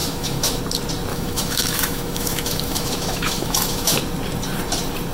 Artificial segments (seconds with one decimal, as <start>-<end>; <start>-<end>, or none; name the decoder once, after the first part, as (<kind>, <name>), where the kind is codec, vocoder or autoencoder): 0.0-0.6 (autoencoder, DAC-VAE); 1.1-4.0